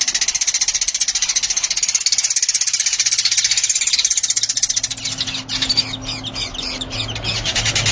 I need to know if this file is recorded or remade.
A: recorded